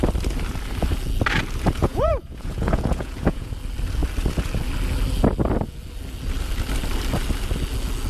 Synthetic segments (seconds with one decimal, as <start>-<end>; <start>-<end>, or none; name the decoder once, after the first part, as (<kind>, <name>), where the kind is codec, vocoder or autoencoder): 1.8-3.5 (vocoder, Vocos)